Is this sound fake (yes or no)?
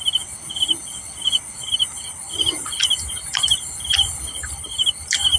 no